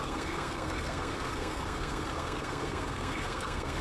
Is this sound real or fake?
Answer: fake